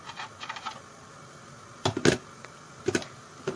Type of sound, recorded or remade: recorded